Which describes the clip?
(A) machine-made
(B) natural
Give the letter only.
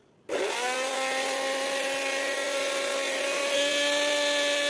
B